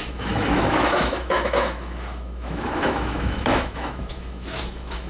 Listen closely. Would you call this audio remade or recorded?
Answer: remade